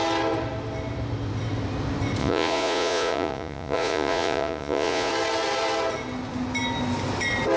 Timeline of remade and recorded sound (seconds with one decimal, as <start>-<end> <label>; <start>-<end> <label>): 0.0-2.2 recorded; 2.2-5.1 remade; 5.1-7.6 recorded